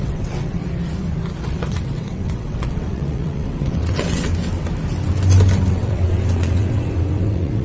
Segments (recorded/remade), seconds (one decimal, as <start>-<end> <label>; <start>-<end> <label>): 0.0-0.6 remade; 0.6-1.4 recorded; 1.4-4.3 remade; 4.3-5.7 recorded; 5.7-7.6 remade